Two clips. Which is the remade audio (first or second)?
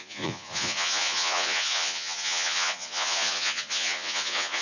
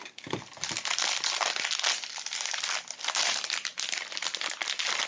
first